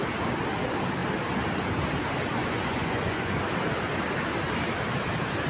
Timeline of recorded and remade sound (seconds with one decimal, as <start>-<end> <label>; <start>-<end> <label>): 0.0-2.4 recorded; 2.4-3.4 remade; 3.4-5.5 recorded